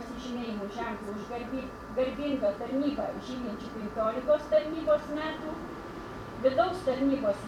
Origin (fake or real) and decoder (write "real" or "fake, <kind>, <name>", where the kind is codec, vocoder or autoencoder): fake, vocoder, BigVGAN v2